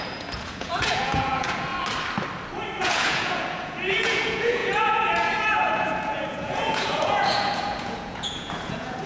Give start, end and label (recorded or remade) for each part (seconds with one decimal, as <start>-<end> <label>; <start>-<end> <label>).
0.0-1.7 remade; 1.7-2.8 recorded; 2.8-9.1 remade